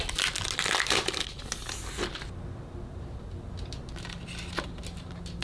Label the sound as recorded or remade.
recorded